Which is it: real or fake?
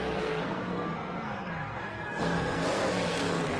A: fake